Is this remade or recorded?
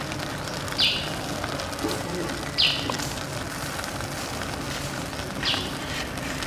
recorded